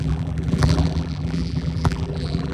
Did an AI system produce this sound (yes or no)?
yes